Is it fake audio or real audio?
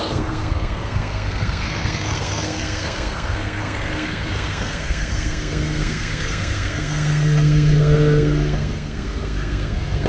fake